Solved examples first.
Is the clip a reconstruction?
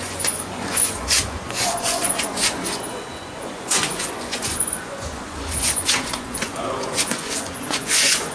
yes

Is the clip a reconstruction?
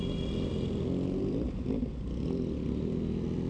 no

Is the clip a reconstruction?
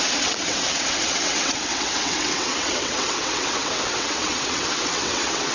yes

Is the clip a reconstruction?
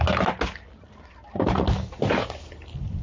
no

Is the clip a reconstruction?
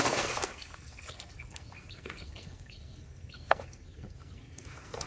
yes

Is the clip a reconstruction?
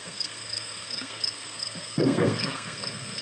yes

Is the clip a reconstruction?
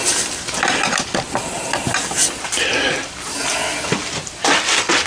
no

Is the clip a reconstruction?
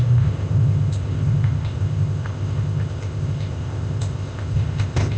yes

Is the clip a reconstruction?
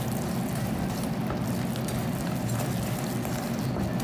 no